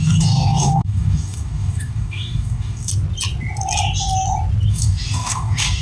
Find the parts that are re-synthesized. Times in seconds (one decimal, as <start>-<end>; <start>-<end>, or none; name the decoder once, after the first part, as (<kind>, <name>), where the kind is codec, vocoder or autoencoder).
0.0-2.9 (codec, DAC); 4.7-5.8